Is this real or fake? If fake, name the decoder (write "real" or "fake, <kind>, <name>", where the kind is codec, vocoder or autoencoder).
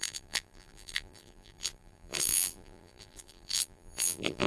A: fake, vocoder, BigVGAN v2